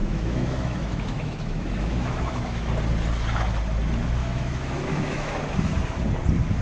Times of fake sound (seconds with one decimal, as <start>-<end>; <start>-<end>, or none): 0.0-2.7; 4.2-5.3